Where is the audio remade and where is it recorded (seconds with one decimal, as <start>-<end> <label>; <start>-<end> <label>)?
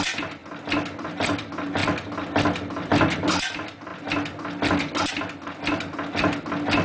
0.0-6.8 recorded